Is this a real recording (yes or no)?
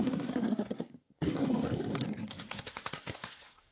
no